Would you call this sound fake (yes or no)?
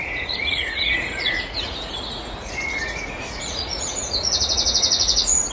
yes